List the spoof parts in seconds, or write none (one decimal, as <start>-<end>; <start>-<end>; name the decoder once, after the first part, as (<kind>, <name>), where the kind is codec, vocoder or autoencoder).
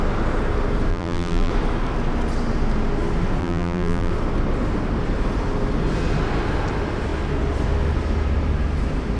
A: 0.9-1.5 (vocoder, BigVGAN v2); 3.4-4.1